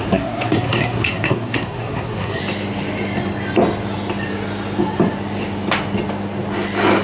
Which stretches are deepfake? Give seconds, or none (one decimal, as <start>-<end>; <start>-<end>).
0.0-2.4

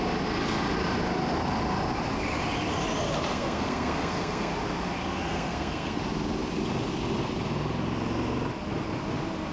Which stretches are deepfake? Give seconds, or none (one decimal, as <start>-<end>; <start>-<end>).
3.3-4.5; 5.3-6.0